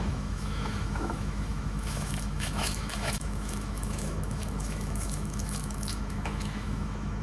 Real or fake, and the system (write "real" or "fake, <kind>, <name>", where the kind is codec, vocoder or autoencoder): fake, autoencoder, DAC-VAE